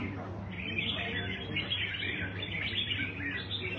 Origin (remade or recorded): recorded